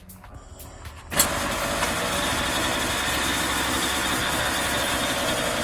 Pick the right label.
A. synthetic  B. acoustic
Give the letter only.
B